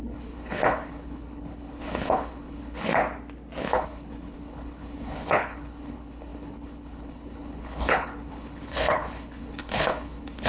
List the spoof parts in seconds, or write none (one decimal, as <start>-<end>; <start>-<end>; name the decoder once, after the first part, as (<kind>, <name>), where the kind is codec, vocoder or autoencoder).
0.0-3.0 (codec, HILCodec); 3.6-10.5